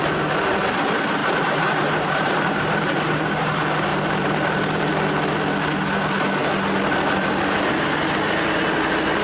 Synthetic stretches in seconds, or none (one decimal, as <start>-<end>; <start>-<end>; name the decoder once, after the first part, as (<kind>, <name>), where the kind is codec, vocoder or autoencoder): 1.2-3.3 (vocoder, BigVGAN v2); 3.9-4.9